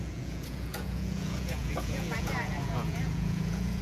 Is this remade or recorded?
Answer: remade